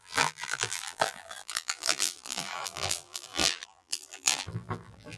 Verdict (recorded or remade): remade